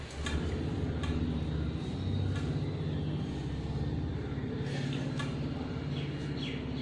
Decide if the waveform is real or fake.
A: real